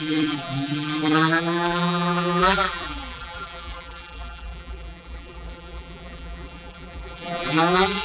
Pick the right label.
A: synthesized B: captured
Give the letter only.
A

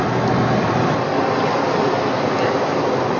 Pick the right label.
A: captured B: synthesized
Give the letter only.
A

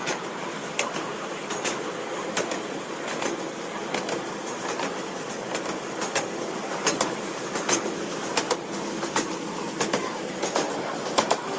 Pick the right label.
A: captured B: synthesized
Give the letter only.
A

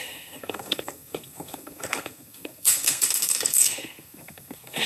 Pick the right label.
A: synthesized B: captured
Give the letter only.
A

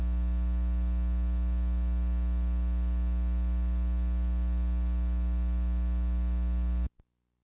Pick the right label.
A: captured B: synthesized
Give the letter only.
A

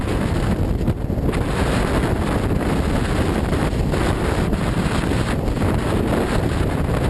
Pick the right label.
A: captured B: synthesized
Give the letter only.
A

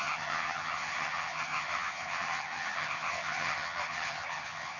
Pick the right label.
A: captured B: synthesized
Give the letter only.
B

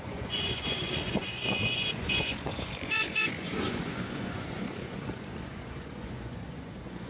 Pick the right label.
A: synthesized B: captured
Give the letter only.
A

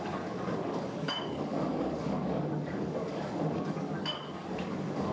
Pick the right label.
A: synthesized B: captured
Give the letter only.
A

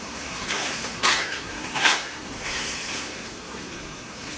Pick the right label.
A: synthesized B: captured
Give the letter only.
A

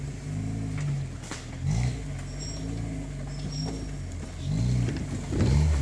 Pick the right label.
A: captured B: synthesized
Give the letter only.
A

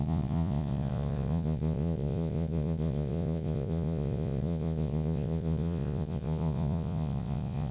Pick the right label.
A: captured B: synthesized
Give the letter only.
B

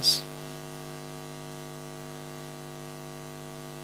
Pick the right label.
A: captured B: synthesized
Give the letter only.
A